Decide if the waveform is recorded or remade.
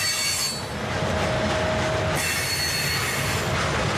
recorded